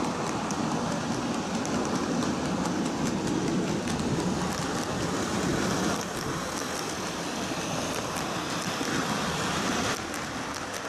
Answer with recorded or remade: recorded